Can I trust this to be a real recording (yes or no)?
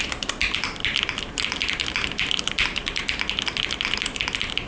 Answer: yes